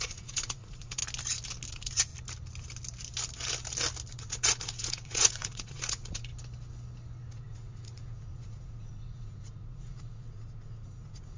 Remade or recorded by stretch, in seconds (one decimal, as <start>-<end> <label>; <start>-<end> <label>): 0.0-1.0 remade; 1.0-1.7 recorded; 1.7-2.1 remade; 2.1-4.1 recorded; 4.1-6.3 remade; 6.3-7.3 recorded; 7.3-11.4 remade

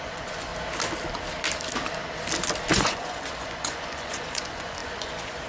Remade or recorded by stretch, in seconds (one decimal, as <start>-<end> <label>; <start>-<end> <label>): 0.0-0.5 remade; 0.5-2.7 recorded; 2.7-5.5 remade

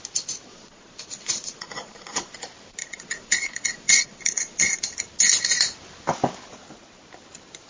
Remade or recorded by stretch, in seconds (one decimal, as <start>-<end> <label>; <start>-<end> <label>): 0.0-0.5 recorded; 0.5-2.4 remade; 2.4-2.8 recorded; 2.8-4.8 remade; 4.8-7.7 recorded

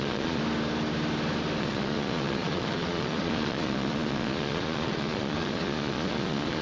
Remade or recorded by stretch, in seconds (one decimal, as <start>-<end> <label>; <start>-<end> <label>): 0.0-0.4 remade; 0.4-1.6 recorded; 1.6-6.6 remade

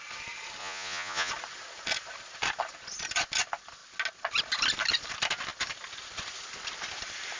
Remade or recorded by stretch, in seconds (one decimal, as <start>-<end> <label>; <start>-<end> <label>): 0.0-0.6 recorded; 0.6-1.3 remade; 1.3-7.4 recorded

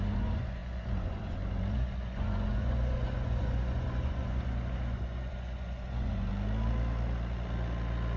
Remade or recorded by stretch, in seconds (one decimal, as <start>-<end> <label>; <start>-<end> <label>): 0.0-6.3 remade; 6.3-8.2 recorded

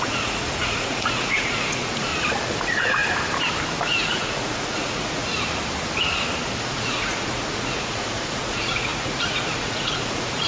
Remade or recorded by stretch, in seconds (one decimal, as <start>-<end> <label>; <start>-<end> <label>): 0.0-2.1 remade; 2.1-2.6 recorded; 2.6-3.0 remade; 3.0-3.8 recorded; 3.8-5.3 remade; 5.3-6.6 recorded; 6.6-10.5 remade

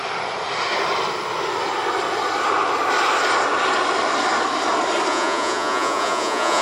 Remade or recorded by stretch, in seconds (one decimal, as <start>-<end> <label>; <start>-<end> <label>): 0.0-5.1 recorded; 5.1-6.6 remade